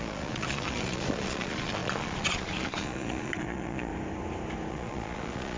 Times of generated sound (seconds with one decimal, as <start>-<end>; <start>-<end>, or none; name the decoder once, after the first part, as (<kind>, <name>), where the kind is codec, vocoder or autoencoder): 0.0-3.9 (vocoder, Vocos); 4.7-5.6